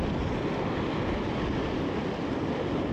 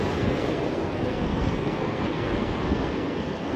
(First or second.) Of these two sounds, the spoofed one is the second